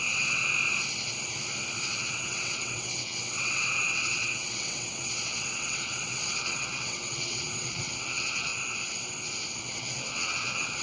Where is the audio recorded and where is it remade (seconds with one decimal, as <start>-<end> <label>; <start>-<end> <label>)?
0.0-0.4 remade; 0.4-2.0 recorded; 2.0-8.5 remade; 8.5-9.6 recorded; 9.6-10.8 remade